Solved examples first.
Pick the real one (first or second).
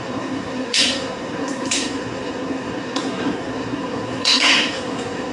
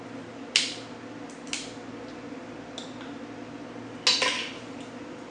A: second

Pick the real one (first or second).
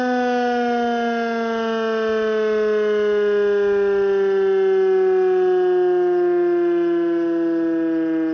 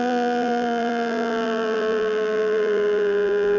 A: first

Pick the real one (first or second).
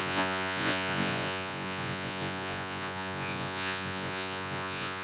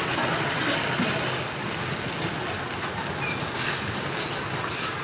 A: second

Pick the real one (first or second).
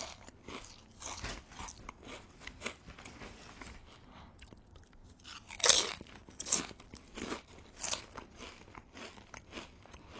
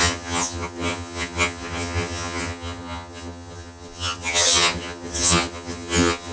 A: first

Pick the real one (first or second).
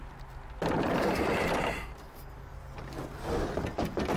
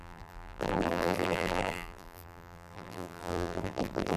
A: first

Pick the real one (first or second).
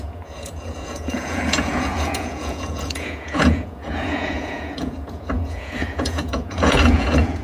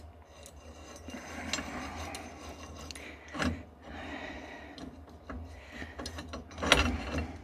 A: second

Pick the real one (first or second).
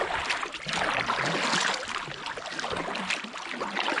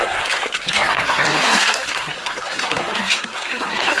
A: first